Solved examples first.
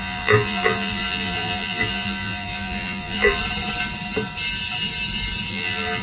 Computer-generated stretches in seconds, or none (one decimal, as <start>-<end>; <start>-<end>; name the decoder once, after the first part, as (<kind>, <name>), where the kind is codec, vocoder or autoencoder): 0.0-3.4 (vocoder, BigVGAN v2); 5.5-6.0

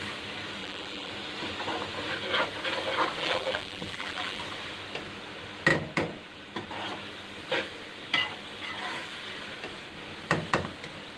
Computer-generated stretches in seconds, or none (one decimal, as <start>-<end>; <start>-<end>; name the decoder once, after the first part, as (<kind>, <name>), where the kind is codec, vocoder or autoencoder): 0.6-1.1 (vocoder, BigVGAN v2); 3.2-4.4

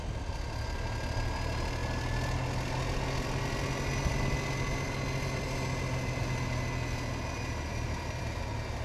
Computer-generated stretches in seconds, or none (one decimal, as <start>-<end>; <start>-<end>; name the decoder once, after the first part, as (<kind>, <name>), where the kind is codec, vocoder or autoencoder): 7.7-8.4 (vocoder, BigVGAN v2)